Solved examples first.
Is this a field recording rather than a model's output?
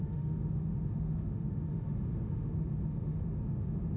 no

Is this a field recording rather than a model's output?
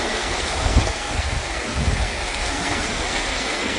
no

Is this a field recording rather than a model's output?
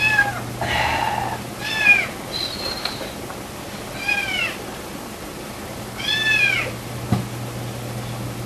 no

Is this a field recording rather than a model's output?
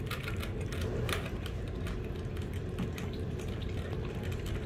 yes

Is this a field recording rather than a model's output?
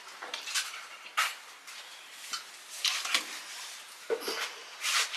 yes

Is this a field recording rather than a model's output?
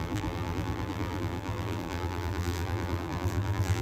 no